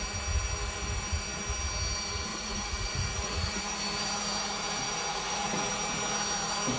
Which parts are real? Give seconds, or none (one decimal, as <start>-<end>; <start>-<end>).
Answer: 0.0-2.3; 3.6-5.1; 5.7-6.8